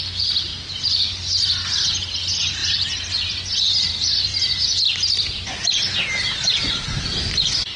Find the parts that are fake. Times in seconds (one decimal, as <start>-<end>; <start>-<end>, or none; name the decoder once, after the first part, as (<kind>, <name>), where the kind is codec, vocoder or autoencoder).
none